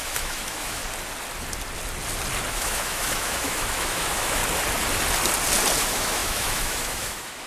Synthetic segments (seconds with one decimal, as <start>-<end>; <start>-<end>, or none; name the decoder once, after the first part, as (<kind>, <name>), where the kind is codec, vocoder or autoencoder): 0.0-0.8 (autoencoder, DAC-VAE); 2.5-4.4; 5.8-7.5